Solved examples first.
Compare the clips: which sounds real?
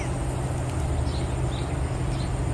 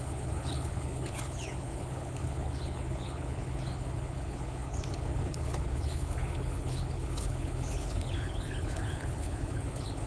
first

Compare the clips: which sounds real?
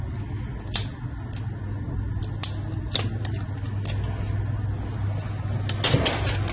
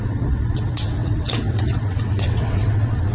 first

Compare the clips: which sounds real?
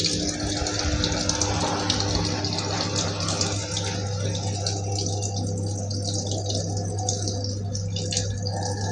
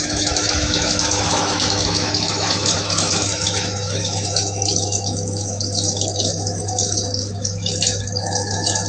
first